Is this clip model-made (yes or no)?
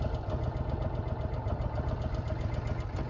no